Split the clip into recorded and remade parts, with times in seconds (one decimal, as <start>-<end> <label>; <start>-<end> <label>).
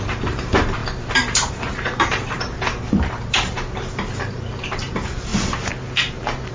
0.0-5.3 remade; 5.3-6.1 recorded; 6.1-6.5 remade